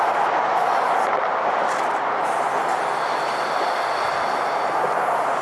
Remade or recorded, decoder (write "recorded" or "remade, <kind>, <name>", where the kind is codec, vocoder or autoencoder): recorded